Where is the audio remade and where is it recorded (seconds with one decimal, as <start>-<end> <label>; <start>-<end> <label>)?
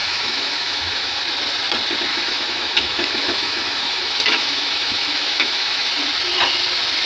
0.0-1.2 remade; 1.2-2.1 recorded; 2.1-6.0 remade; 6.0-7.1 recorded